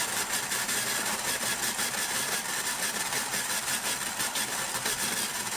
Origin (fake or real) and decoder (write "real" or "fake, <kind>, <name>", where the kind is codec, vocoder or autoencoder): fake, vocoder, BigVGAN v2